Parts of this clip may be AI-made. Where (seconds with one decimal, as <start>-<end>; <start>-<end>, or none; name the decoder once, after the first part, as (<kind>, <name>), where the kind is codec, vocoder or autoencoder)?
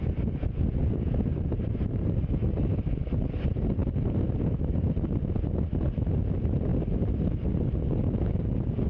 0.8-1.6 (vocoder, BigVGAN v2); 6.7-7.6